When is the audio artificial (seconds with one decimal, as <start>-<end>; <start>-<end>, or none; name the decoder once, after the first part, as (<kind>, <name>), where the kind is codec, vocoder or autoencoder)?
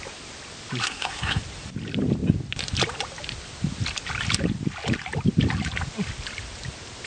0.8-1.4 (codec, SNAC)